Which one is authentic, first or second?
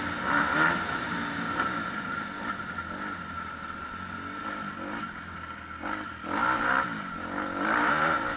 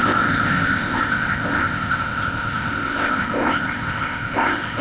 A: first